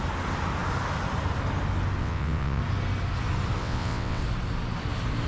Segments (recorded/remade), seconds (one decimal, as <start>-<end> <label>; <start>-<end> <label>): 0.0-2.0 recorded; 2.0-2.6 remade; 2.6-3.6 recorded; 3.6-4.2 remade; 4.2-5.3 recorded